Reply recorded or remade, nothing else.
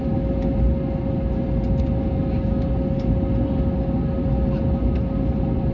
recorded